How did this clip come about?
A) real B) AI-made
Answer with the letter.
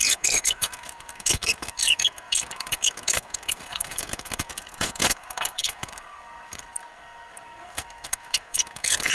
B